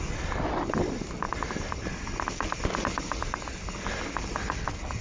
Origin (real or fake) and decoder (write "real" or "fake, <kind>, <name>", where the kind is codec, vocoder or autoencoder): real